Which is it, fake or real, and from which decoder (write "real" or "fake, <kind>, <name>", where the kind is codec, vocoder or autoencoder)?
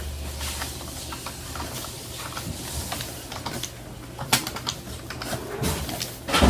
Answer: real